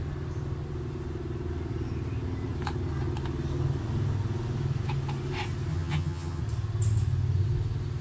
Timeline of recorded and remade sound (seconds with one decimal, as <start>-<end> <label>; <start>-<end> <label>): 0.0-5.7 recorded; 5.7-6.4 remade; 6.4-8.0 recorded